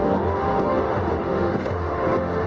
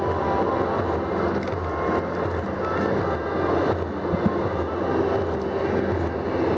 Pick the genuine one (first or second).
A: second